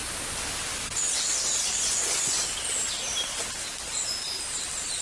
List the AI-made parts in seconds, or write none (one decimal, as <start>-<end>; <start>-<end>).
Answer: 1.8-2.4